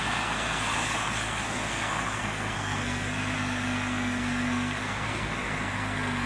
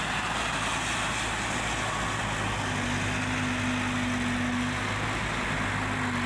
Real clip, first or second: second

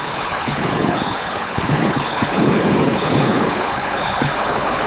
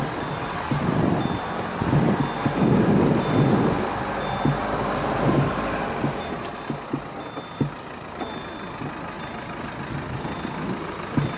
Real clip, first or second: second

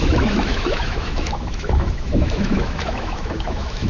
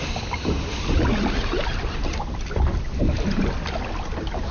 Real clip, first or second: second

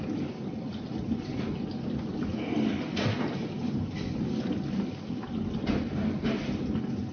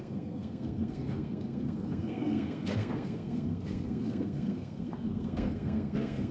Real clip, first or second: first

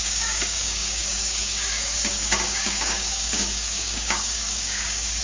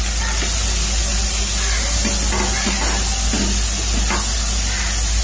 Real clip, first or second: second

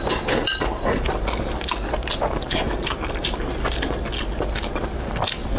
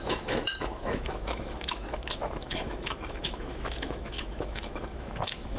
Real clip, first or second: first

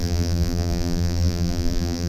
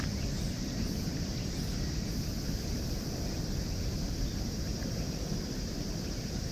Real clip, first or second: second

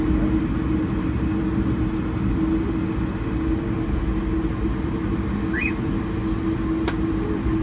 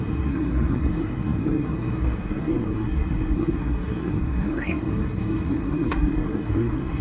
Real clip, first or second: first